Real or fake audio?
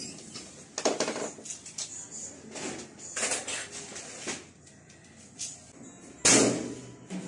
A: real